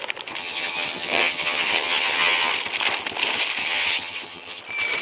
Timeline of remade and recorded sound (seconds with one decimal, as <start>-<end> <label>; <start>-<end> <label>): 0.0-0.4 recorded; 0.4-2.5 remade; 2.5-3.6 recorded; 3.6-4.6 remade; 4.6-5.0 recorded